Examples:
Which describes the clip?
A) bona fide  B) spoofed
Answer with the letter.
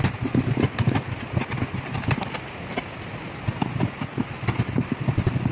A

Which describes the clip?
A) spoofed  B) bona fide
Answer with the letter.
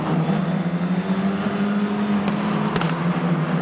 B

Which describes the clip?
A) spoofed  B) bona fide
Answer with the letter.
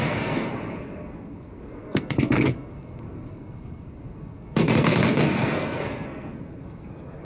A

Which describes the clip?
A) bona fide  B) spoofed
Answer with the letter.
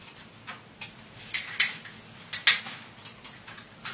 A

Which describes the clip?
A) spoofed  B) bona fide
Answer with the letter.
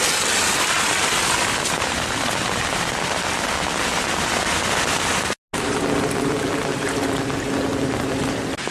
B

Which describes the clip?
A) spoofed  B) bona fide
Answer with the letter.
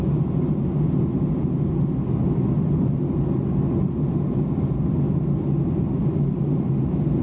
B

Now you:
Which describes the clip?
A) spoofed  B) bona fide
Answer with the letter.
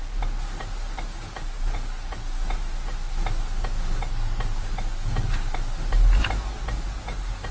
B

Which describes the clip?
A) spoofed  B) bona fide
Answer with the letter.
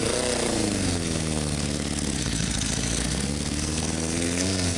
A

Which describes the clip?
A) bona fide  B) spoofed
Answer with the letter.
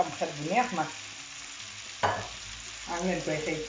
A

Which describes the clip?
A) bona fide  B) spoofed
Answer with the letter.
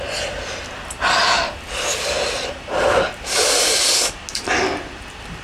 A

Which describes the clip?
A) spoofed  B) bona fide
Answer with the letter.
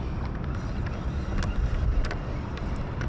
B